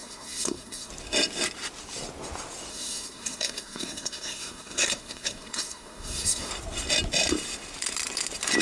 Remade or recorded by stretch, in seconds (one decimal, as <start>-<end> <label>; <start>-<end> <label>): 0.0-0.9 remade; 0.9-2.7 recorded; 2.7-6.5 remade; 6.5-8.6 recorded